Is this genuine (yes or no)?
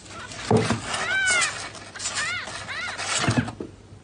yes